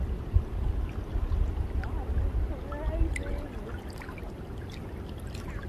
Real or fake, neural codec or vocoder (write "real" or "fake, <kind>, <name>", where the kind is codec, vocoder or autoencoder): real